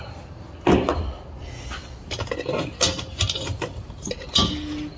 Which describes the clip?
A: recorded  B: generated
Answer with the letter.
A